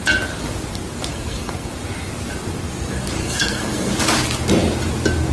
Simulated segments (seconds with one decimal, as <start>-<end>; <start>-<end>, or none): 1.1-1.7; 3.2-3.9